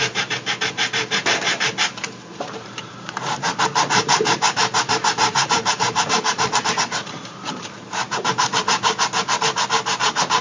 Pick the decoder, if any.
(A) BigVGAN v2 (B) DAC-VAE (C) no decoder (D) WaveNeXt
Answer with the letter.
A